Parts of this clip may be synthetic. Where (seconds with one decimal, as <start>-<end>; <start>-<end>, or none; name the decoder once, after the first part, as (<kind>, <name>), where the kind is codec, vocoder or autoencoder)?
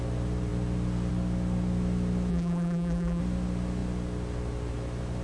2.3-3.2 (vocoder, BigVGAN v2)